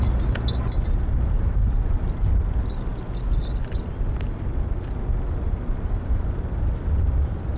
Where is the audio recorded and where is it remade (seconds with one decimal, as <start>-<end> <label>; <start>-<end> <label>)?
0.0-7.6 recorded

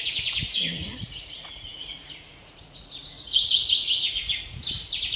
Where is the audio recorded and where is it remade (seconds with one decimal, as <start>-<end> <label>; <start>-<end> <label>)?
0.0-5.2 remade

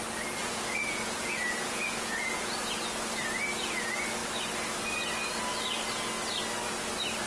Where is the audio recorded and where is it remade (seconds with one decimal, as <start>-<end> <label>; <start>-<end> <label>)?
0.0-0.4 recorded; 0.4-2.7 remade; 2.7-7.3 recorded

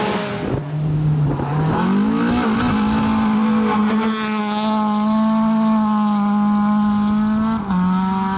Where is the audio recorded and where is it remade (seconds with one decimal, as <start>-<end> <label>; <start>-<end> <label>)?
0.0-8.4 recorded

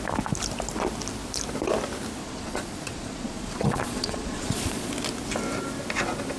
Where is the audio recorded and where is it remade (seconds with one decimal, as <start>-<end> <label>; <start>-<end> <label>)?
0.0-2.2 recorded; 2.2-4.9 remade; 4.9-6.4 recorded

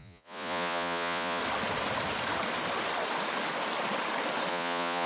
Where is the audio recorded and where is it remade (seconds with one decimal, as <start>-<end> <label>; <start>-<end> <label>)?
0.0-1.4 remade; 1.4-4.5 recorded; 4.5-5.1 remade

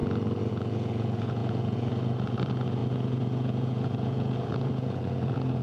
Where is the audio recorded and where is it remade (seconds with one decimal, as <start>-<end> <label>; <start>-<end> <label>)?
0.0-5.6 remade

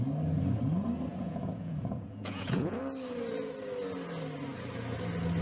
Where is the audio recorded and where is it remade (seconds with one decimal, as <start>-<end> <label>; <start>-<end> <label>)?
0.0-1.1 recorded; 1.1-2.8 remade; 2.8-5.4 recorded